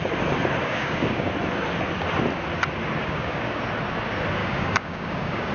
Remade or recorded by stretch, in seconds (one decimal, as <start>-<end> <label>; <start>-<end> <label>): 0.0-0.6 recorded; 0.6-1.3 remade; 1.3-3.0 recorded; 3.0-3.6 remade; 3.6-4.4 recorded; 4.4-5.5 remade